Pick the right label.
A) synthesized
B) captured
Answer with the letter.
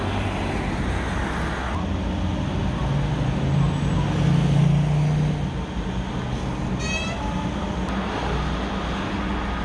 B